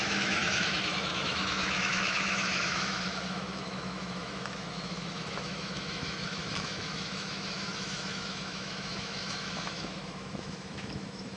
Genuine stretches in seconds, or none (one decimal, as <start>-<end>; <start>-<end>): none